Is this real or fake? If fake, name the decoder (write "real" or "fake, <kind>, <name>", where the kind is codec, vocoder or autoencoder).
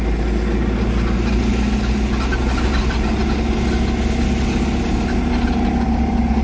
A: real